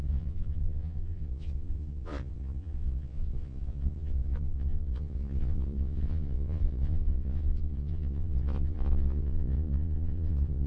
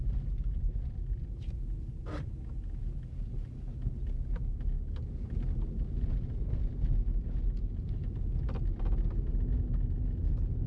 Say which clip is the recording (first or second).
second